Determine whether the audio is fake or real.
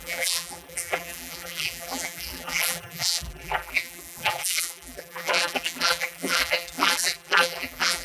fake